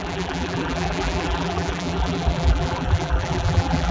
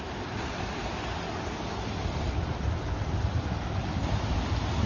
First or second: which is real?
second